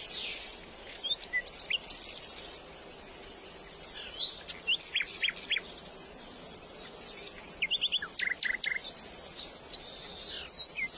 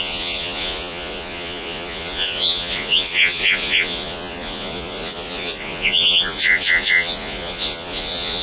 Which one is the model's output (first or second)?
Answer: second